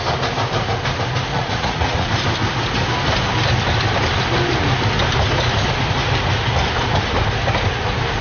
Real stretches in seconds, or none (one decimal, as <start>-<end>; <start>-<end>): 0.0-1.3; 2.1-8.2